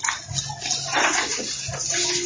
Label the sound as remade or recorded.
recorded